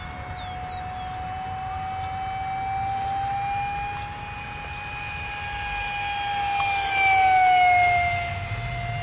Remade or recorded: recorded